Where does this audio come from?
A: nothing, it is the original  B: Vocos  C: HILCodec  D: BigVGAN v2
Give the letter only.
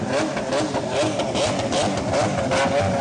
A